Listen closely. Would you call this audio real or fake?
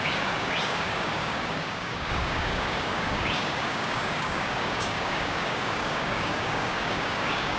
fake